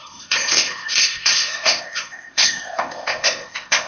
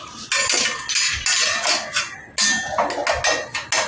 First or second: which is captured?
second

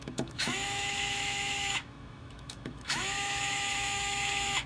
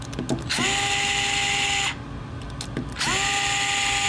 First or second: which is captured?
second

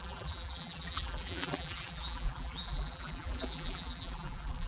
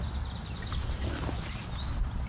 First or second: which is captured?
second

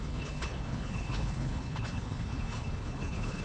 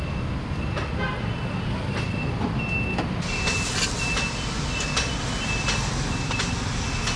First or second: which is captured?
second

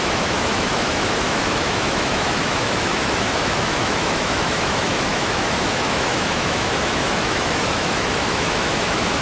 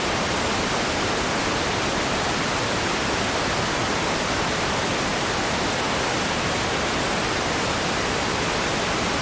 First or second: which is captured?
second